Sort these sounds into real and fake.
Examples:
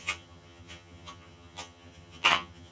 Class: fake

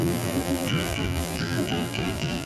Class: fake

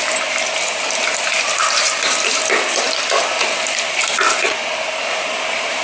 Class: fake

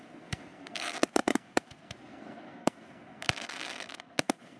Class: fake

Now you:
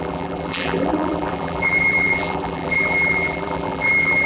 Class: fake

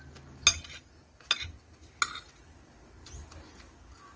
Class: real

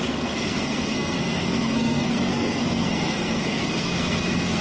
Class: fake